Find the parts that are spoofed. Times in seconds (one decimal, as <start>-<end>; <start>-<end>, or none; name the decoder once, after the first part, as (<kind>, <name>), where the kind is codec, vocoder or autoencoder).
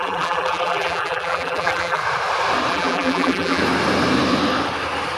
0.0-2.0 (vocoder, BigVGAN v2); 2.7-3.6